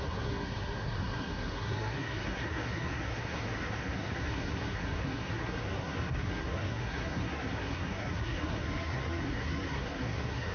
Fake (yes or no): yes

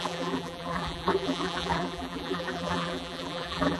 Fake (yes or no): yes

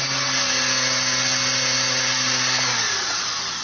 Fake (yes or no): no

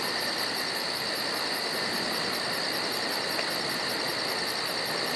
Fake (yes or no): no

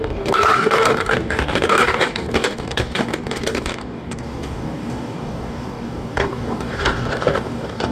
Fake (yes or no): yes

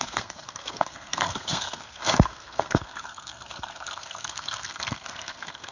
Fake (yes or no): yes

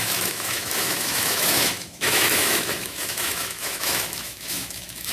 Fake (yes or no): yes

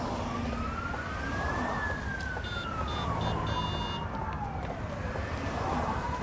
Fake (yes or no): no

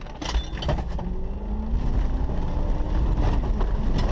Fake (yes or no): no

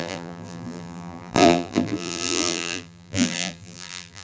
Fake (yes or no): yes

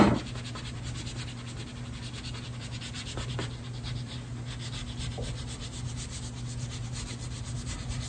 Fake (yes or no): no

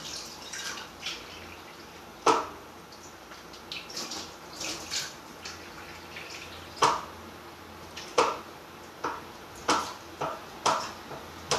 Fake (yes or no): no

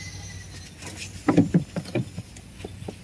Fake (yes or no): no